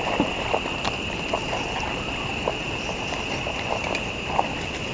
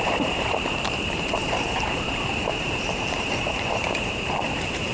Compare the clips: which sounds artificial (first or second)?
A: second